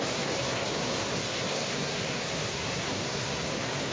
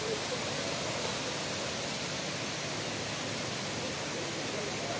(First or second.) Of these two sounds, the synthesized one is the first